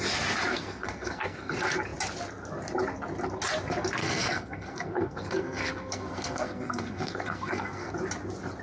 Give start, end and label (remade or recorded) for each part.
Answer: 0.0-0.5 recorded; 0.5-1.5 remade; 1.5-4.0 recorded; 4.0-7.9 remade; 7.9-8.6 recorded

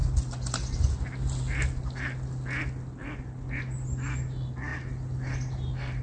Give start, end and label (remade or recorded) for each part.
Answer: 0.0-6.0 recorded